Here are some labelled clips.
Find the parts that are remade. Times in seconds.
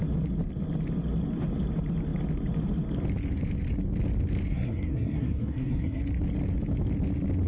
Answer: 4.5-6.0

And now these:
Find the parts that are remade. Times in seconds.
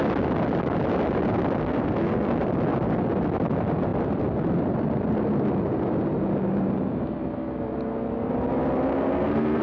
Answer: 1.6-2.3; 8.9-9.6